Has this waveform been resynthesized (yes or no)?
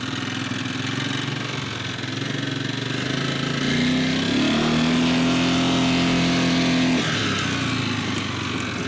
no